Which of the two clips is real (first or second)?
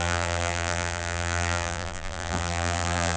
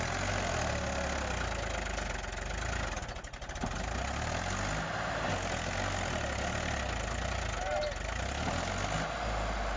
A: second